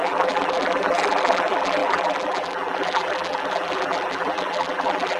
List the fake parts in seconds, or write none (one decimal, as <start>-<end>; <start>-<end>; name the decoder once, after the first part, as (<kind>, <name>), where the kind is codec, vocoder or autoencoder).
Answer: 0.0-5.2 (vocoder, BigVGAN v2)